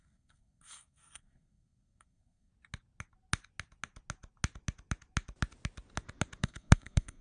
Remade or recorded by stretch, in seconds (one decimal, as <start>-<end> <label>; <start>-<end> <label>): 0.0-2.5 remade; 2.5-6.4 recorded; 6.4-7.2 remade